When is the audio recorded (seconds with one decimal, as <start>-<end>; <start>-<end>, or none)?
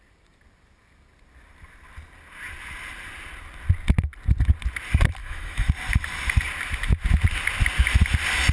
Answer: 0.0-5.2; 5.7-8.5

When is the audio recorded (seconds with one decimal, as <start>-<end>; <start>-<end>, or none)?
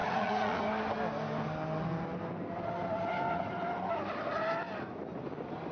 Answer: 0.6-5.7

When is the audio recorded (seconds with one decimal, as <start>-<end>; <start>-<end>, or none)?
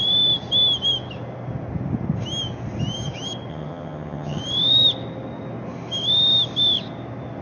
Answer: 0.0-3.5; 4.4-7.4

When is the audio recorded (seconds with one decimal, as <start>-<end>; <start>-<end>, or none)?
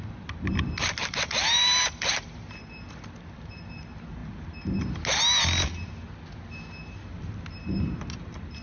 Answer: 0.0-1.0; 2.0-8.6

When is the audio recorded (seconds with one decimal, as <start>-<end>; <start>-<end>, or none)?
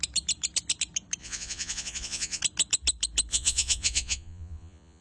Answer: 0.0-1.2; 2.4-3.3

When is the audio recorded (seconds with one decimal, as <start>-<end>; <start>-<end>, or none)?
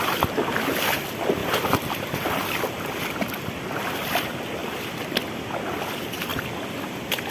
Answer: 0.0-1.4; 2.3-4.6; 5.2-6.3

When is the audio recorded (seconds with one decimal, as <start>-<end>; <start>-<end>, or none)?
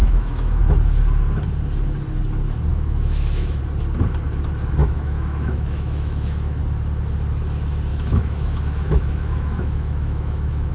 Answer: 0.6-2.7; 3.6-4.8; 6.6-7.9